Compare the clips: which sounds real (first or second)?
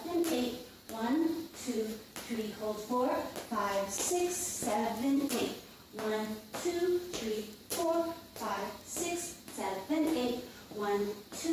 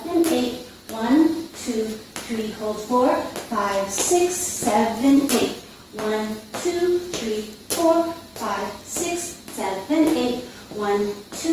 second